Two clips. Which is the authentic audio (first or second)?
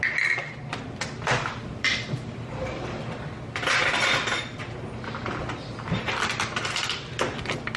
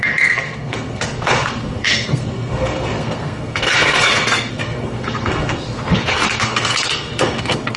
first